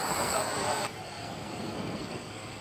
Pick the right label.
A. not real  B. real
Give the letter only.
A